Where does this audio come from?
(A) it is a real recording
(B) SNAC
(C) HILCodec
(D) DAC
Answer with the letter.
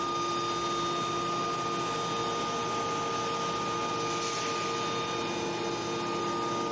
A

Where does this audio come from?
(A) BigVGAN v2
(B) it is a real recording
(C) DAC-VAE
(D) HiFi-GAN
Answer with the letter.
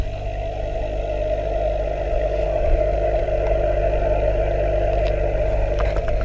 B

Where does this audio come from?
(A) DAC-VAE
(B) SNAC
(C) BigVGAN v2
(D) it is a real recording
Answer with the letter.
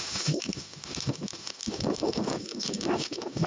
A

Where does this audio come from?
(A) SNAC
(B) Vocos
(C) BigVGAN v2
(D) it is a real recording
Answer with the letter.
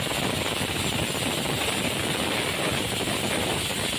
C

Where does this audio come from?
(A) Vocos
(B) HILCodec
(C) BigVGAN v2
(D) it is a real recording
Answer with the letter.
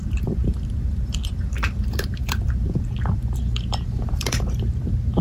C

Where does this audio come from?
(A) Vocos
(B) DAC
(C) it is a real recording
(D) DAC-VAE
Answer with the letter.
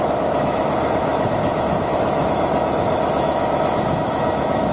D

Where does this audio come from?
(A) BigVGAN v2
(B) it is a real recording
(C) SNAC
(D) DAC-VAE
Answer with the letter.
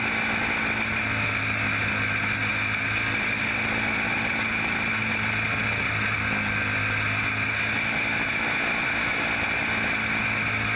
B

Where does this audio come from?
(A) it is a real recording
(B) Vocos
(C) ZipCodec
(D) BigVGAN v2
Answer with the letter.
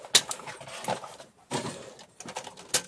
A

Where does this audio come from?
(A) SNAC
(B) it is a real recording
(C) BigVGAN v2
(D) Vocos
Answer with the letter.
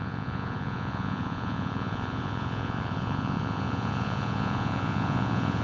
D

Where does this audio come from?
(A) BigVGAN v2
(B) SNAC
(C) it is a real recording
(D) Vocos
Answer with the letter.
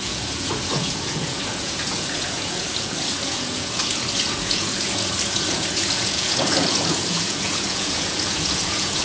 D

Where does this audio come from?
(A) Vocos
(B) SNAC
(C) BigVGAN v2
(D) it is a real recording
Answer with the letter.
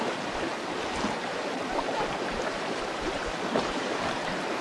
C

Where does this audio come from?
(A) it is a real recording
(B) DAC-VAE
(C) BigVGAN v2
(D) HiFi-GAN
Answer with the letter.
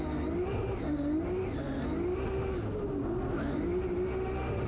A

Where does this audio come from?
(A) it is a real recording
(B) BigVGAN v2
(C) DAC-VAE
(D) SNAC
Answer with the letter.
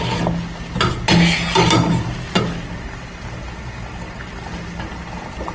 A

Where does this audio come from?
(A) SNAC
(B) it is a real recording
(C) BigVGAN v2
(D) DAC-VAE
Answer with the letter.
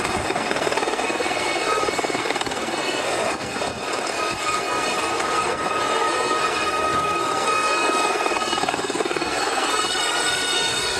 A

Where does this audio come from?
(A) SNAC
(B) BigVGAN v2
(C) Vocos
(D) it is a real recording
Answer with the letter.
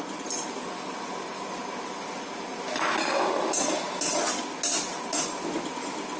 D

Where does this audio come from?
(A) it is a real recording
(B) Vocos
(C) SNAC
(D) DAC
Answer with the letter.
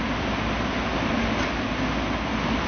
A